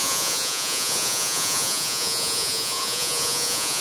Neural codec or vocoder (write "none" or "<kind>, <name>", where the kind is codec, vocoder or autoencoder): vocoder, Vocos